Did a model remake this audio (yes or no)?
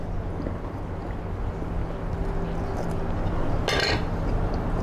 no